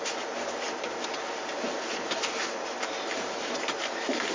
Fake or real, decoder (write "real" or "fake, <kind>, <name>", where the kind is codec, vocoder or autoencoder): fake, vocoder, BigVGAN v2